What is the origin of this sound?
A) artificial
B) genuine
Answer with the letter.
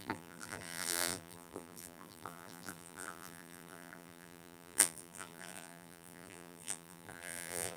A